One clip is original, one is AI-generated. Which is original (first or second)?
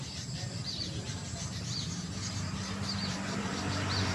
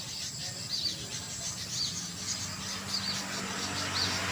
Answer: second